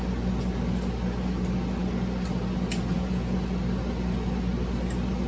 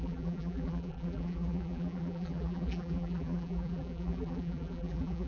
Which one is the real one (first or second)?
first